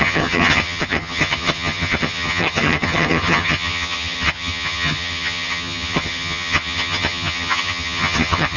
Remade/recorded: remade